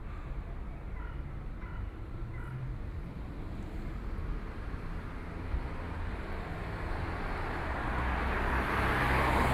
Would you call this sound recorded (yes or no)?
yes